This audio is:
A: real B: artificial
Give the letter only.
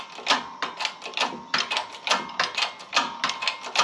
A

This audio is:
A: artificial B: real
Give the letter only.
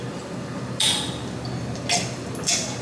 B